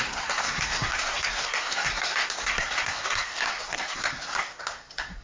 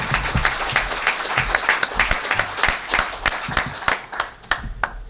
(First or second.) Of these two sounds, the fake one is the first